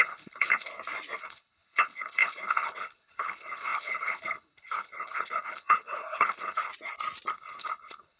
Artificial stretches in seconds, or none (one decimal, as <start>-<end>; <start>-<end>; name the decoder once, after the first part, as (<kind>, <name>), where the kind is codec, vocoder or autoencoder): 0.0-0.7 (codec, HILCodec); 1.2-6.7; 7.3-8.2